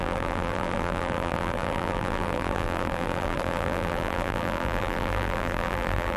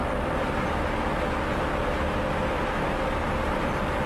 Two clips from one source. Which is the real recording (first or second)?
second